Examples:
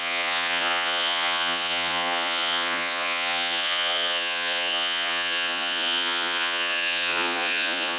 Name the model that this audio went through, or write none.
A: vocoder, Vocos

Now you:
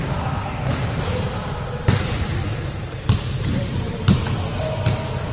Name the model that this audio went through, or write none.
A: vocoder, BigVGAN v2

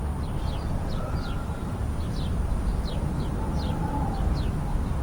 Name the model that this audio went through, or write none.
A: none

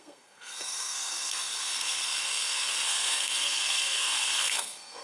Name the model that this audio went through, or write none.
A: codec, SNAC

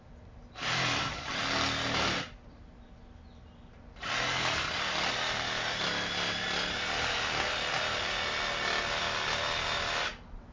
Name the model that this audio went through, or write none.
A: none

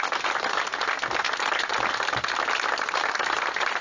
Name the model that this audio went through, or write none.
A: none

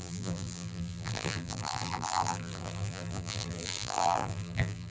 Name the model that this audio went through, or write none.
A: vocoder, BigVGAN v2